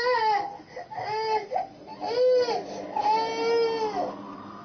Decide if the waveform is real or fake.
real